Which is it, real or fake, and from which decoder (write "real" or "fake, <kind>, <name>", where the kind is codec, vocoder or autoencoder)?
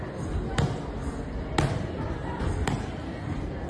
real